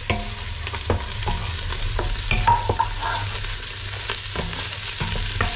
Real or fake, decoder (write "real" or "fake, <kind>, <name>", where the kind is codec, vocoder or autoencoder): real